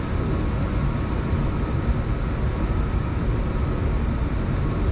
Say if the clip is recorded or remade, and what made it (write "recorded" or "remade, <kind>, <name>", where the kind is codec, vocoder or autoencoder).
recorded